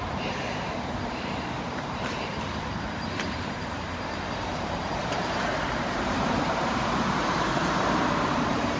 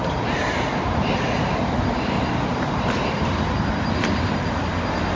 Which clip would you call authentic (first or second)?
second